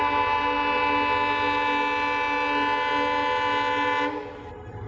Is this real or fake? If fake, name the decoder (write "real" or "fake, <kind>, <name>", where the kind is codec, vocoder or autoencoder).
real